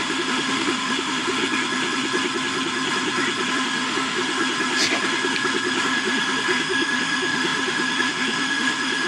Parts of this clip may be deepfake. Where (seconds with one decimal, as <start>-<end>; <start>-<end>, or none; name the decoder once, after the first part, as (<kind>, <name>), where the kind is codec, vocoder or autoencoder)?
0.0-1.4 (autoencoder, DAC-VAE); 3.5-4.4; 5.8-9.1